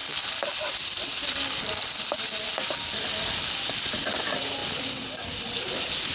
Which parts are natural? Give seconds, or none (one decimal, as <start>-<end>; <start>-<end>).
0.0-6.1